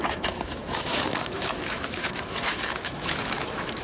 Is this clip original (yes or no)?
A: no